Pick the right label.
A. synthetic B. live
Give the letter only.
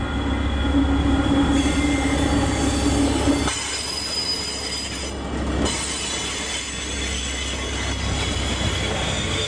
B